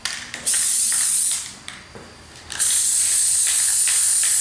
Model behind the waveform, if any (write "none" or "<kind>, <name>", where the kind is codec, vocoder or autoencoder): none